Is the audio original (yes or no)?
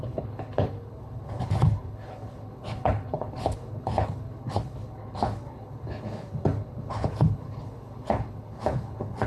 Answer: no